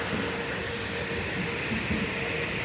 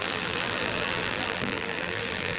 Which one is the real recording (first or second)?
first